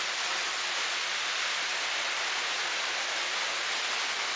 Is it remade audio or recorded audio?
recorded